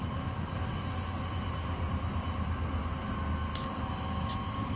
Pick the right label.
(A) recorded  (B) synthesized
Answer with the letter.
A